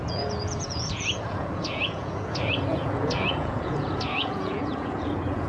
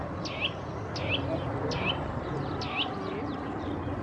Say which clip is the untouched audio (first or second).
second